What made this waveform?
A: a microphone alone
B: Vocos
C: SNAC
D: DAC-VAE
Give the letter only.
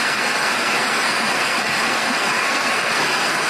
C